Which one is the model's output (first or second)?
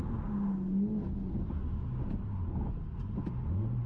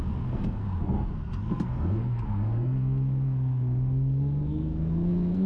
second